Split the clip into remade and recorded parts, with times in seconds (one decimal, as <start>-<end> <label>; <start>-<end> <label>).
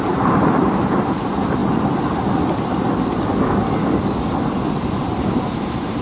0.0-1.6 remade; 1.6-5.2 recorded; 5.2-6.0 remade